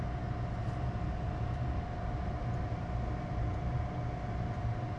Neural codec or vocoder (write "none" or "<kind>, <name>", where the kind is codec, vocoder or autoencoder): none